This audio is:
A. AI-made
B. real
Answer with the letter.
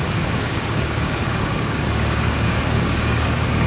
A